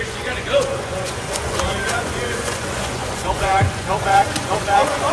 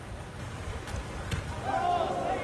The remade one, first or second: first